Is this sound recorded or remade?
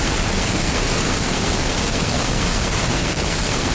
remade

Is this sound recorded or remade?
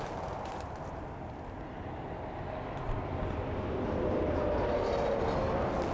recorded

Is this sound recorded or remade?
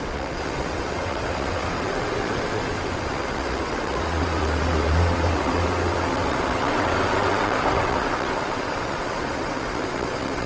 remade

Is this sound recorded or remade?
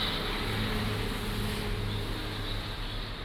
recorded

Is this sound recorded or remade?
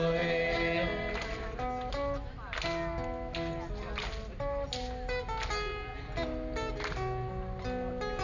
recorded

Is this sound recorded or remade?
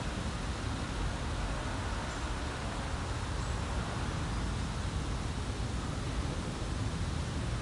recorded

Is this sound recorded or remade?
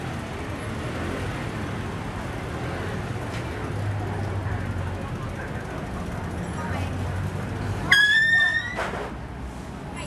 recorded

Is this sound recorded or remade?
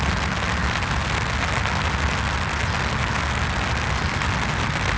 recorded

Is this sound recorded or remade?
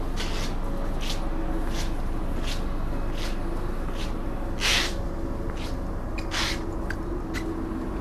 recorded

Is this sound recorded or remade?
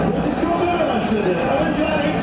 recorded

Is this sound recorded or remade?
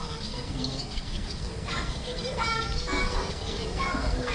remade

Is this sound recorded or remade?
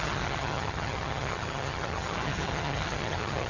remade